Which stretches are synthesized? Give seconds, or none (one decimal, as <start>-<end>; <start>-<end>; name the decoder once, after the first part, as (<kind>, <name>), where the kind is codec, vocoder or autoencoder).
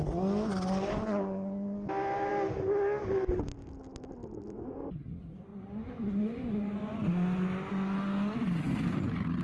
5.5-7.1 (vocoder, Vocos)